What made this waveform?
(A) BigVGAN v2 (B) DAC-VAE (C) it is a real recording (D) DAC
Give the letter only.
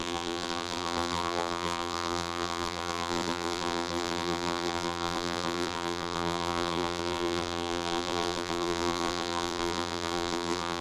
A